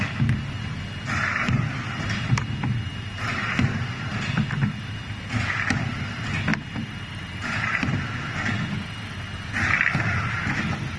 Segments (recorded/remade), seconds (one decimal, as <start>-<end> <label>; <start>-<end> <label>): 0.0-6.5 recorded; 6.5-7.3 remade; 7.3-11.0 recorded